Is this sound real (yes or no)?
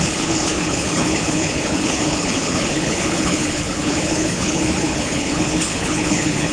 no